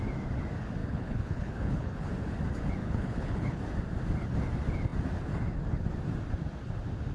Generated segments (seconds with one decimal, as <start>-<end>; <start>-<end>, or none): 0.8-2.1; 2.8-3.6

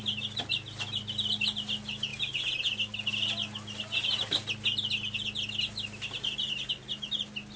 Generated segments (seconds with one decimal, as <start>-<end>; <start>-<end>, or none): none

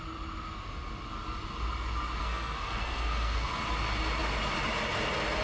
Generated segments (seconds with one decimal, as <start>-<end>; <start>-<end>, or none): 2.2-3.5

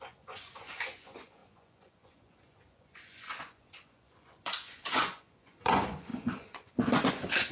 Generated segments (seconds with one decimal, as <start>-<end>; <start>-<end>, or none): 0.0-7.5